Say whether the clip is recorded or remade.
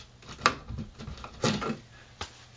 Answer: recorded